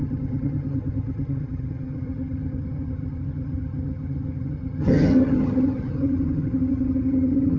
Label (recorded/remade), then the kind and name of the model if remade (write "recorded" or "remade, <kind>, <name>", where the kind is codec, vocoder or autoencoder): remade, vocoder, HiFi-GAN